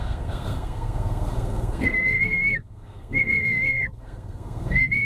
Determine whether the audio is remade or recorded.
remade